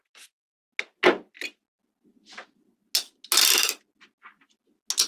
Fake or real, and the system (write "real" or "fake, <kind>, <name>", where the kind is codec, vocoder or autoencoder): real